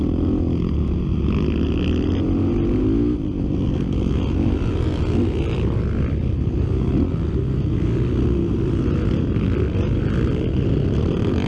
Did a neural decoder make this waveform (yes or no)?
no